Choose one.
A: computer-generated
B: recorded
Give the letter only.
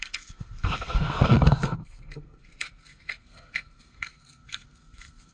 A